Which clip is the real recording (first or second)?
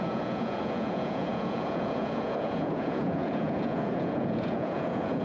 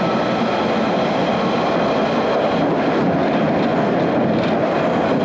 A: second